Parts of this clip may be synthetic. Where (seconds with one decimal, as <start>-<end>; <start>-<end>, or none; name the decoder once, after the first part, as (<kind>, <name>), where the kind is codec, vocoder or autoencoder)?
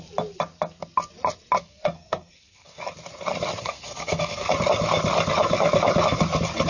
1.6-2.8 (codec, SNAC); 3.6-4.5